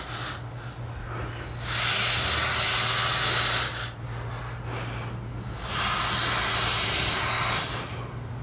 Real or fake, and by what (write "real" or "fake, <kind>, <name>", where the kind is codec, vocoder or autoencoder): real